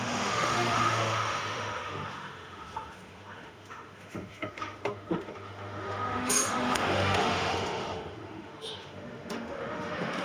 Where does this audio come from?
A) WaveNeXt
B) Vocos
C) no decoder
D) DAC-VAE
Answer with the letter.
D